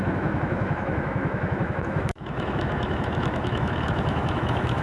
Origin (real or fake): fake